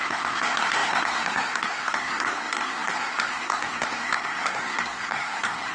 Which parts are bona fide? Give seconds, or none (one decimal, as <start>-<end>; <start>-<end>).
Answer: none